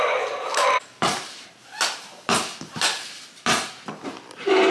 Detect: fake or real real